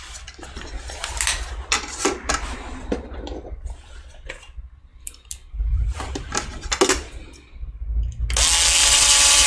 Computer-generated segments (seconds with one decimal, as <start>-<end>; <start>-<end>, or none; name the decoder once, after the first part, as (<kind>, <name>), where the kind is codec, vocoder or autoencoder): 1.0-3.9 (vocoder, BigVGAN v2); 4.9-6.5; 8.8-9.5